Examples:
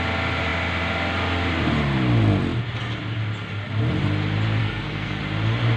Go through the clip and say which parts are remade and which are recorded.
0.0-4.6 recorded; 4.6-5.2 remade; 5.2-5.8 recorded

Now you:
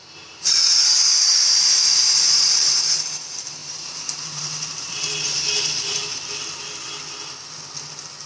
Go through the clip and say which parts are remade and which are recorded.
0.0-6.0 remade; 6.0-8.3 recorded

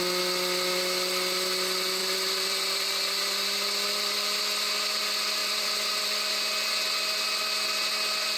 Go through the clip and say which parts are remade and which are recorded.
0.0-2.0 recorded; 2.0-4.4 remade; 4.4-5.4 recorded; 5.4-6.0 remade; 6.0-8.4 recorded

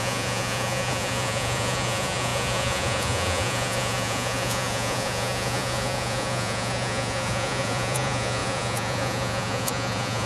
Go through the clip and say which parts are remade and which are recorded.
0.0-10.3 remade

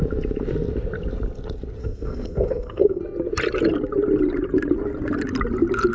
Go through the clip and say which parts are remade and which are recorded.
0.0-1.8 recorded; 1.8-3.0 remade; 3.0-5.9 recorded

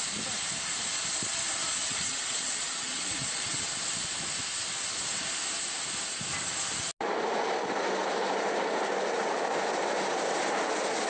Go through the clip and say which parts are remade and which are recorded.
0.0-1.6 recorded; 1.6-3.6 remade; 3.6-11.1 recorded

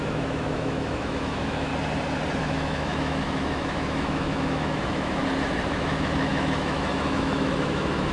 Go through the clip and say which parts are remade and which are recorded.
0.0-1.7 remade; 1.7-2.4 recorded; 2.4-5.2 remade; 5.2-5.7 recorded; 5.7-8.1 remade

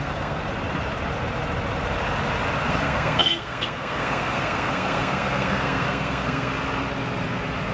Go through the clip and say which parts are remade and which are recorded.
0.0-0.4 remade; 0.4-2.7 recorded; 2.7-6.5 remade; 6.5-7.7 recorded